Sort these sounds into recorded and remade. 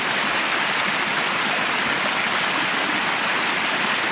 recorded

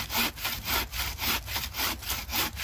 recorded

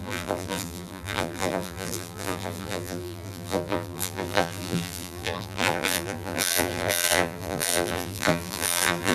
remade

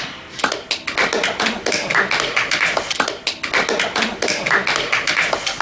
recorded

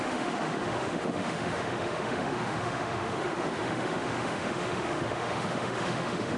remade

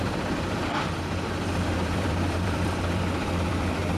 remade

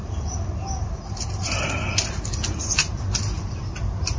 recorded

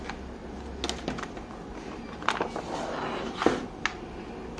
recorded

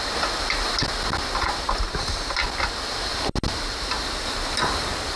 recorded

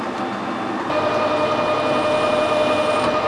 recorded